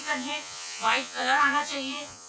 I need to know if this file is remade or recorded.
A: remade